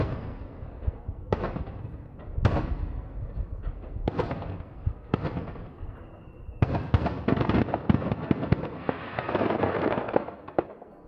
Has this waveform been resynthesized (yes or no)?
yes